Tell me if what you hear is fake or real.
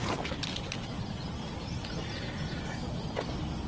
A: real